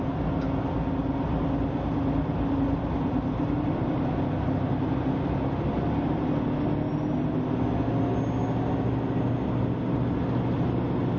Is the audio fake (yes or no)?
no